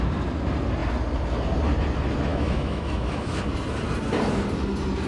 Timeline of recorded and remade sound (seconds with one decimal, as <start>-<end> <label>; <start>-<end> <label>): 0.0-2.3 recorded; 2.3-3.4 remade; 3.4-5.1 recorded